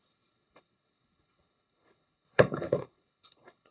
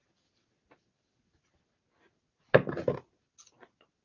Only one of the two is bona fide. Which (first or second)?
second